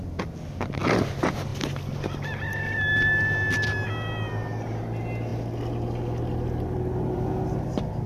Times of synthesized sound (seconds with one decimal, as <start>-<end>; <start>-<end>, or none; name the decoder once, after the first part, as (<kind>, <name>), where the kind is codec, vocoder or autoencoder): none